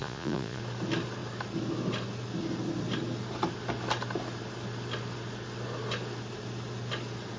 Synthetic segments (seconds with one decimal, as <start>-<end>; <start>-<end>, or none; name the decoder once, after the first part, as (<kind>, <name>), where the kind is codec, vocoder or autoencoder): 0.0-0.6 (vocoder, Vocos)